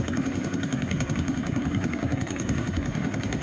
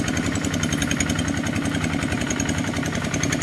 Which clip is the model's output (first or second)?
first